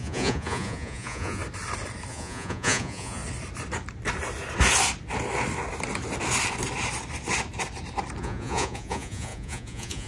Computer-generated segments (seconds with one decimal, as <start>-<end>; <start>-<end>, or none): 0.0-1.4; 2.1-3.2; 8.2-10.1